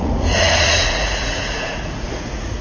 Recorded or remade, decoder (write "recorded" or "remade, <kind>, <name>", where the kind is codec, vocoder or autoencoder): remade, vocoder, Vocos